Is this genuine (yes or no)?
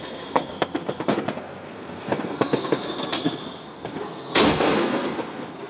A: no